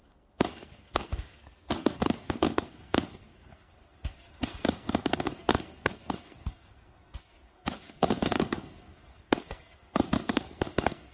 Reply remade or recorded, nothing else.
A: remade